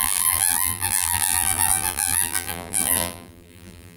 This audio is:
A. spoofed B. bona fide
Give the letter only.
A